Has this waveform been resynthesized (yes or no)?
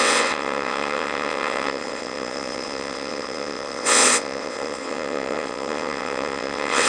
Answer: yes